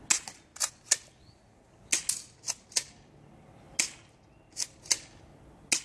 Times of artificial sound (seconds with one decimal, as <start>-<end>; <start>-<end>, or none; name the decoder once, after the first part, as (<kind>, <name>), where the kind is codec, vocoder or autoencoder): none